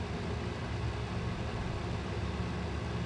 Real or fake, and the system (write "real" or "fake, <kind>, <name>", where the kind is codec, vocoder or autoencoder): real